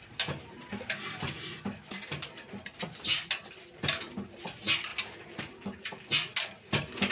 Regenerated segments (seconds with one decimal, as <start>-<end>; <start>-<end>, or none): none